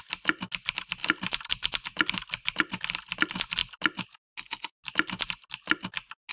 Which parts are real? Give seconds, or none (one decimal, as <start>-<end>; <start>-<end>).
0.0-1.0; 1.7-6.3

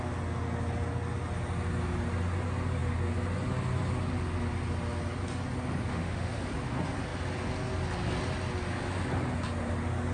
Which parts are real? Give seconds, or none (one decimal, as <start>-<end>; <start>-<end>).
0.0-5.9; 6.5-10.1

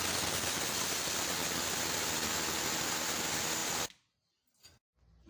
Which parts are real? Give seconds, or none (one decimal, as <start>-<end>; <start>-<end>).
0.0-5.3